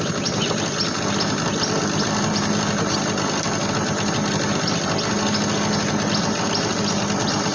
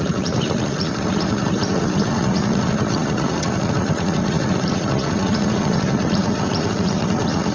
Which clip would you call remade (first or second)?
second